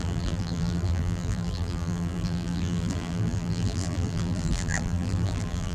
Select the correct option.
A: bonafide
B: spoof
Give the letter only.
B